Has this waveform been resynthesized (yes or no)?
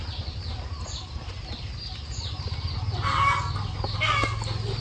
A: no